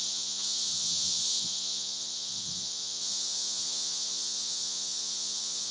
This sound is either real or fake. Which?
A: fake